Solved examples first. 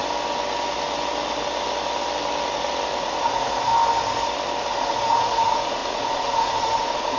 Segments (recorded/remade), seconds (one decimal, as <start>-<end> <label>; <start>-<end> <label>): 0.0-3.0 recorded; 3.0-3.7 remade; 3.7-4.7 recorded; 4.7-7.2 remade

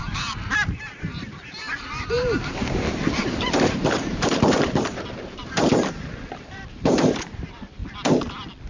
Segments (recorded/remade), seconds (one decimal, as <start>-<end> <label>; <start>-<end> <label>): 0.0-7.8 remade; 7.8-8.7 recorded

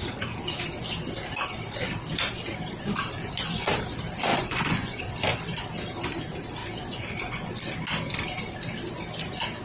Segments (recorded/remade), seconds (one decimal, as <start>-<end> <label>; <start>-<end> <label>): 0.0-3.2 recorded; 3.2-3.8 remade; 3.8-4.3 recorded; 4.3-5.0 remade; 5.0-6.6 recorded; 6.6-7.5 remade; 7.5-9.6 recorded